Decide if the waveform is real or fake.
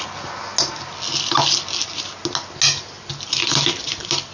real